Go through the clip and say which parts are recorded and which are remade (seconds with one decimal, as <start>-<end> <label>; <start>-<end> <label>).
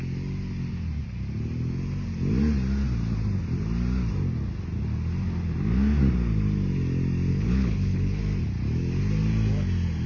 0.0-7.3 recorded; 7.3-8.2 remade; 8.2-10.1 recorded